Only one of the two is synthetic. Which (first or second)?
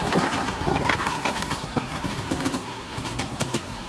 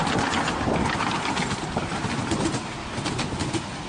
first